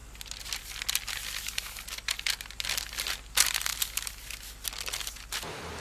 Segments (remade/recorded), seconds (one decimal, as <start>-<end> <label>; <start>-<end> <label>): 0.0-5.8 recorded